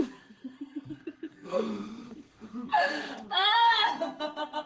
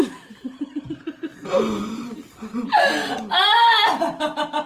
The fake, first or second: first